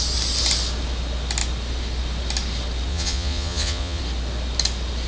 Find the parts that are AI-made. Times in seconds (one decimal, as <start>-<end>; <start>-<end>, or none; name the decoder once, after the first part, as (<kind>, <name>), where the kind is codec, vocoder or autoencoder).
2.9-4.0 (vocoder, Vocos)